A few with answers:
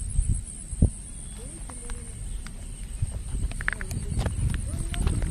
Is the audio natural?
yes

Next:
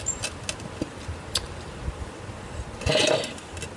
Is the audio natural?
yes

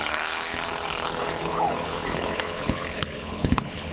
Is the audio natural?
no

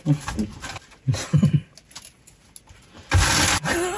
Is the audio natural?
yes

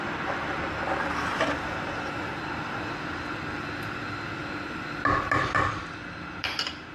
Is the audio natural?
yes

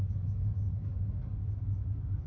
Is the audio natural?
no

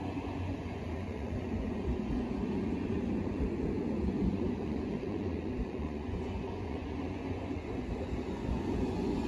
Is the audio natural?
no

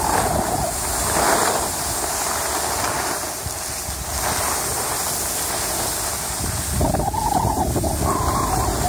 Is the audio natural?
yes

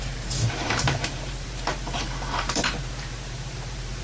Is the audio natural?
no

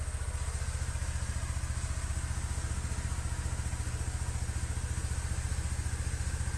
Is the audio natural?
yes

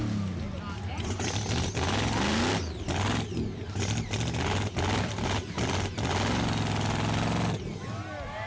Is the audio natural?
yes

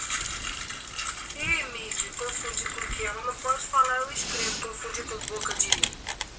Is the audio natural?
yes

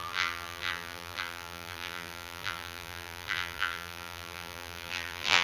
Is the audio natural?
no